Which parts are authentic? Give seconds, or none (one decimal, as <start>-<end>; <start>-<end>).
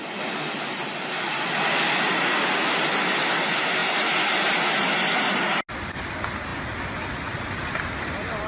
0.0-8.5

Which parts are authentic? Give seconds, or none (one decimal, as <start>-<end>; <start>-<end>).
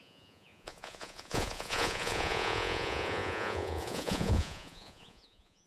none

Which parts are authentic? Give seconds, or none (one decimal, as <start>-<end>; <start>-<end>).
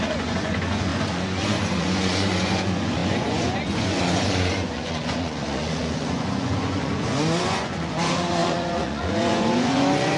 none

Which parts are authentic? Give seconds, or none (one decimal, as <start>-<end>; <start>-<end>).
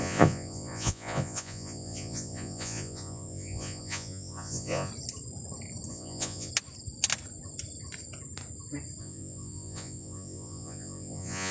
4.9-5.9; 6.5-9.0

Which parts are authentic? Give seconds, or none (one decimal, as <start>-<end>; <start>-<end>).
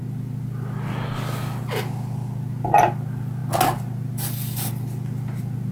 0.0-5.7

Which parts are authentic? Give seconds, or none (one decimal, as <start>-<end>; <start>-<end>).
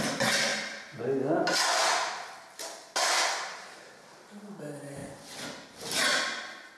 0.0-6.8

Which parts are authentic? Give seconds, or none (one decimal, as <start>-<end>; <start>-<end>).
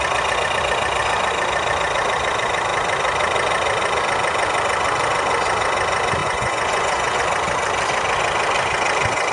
0.0-6.2; 7.2-9.3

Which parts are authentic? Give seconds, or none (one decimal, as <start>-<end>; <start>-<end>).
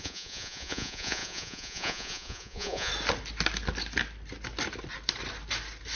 2.9-6.0